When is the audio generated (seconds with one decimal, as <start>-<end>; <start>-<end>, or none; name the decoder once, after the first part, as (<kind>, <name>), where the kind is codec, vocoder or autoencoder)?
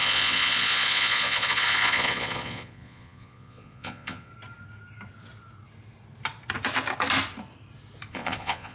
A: 0.0-4.3 (vocoder, Vocos); 8.1-8.7